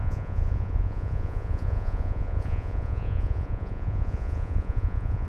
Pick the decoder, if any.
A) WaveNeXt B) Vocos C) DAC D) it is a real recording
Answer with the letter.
B